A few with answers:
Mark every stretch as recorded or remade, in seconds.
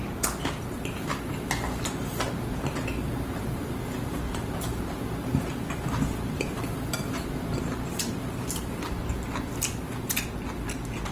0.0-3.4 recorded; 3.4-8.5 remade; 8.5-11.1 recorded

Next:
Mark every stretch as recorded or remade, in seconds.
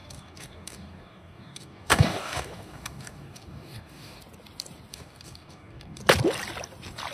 0.0-4.2 remade; 4.2-4.9 recorded; 4.9-6.0 remade; 6.0-7.1 recorded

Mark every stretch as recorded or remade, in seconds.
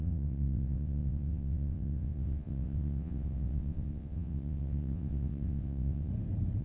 0.0-6.1 remade; 6.1-6.6 recorded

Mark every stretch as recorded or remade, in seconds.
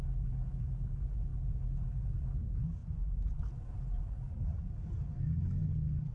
0.0-2.8 recorded; 2.8-3.4 remade; 3.4-6.1 recorded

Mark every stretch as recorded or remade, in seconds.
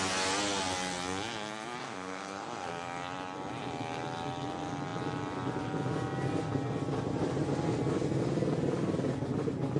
0.0-1.8 recorded; 1.8-2.7 remade; 2.7-9.8 recorded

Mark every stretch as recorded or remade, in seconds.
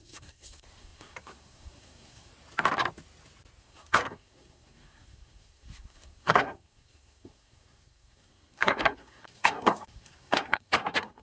0.0-2.3 remade; 2.3-3.6 recorded; 3.6-11.2 remade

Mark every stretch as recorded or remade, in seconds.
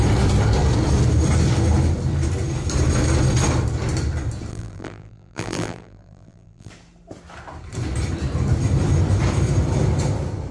0.0-4.5 recorded; 4.5-6.7 remade; 6.7-10.5 recorded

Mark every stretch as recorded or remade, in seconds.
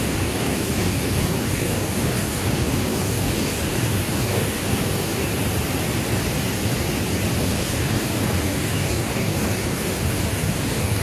0.0-5.3 remade; 5.3-7.4 recorded; 7.4-11.0 remade